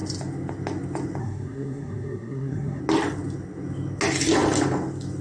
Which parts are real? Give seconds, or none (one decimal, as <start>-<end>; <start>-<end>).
0.0-1.2; 2.8-5.2